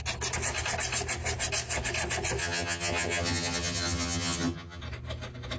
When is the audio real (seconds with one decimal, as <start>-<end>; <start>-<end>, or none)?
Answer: 0.0-2.4; 4.8-5.6